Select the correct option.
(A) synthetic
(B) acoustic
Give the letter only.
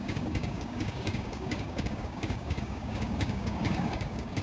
A